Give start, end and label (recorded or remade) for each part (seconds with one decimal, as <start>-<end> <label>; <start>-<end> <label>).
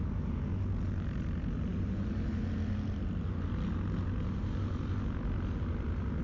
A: 0.0-6.2 recorded